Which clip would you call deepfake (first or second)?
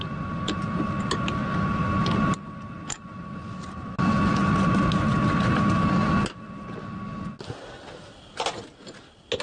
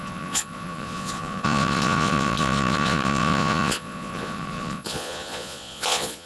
second